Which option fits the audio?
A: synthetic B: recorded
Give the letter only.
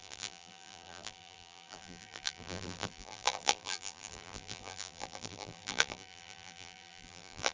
A